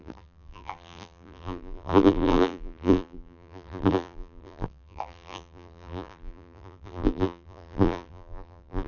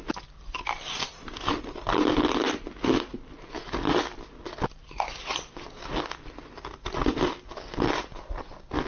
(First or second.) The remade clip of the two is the first